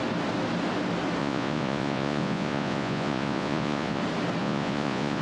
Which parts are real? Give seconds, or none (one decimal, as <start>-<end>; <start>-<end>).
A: 0.0-1.2; 4.0-4.4